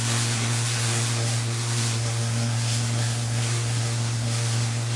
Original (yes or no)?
no